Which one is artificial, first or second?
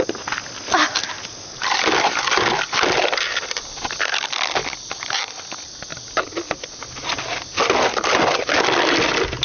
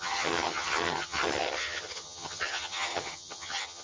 second